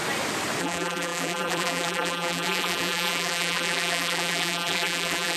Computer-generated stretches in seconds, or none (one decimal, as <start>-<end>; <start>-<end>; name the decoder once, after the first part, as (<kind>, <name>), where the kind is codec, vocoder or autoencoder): 0.6-5.4 (vocoder, BigVGAN v2)